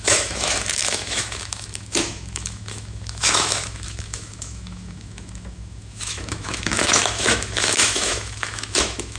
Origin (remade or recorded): remade